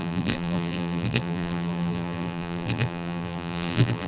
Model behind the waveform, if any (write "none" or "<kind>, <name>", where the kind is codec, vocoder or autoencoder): vocoder, BigVGAN v2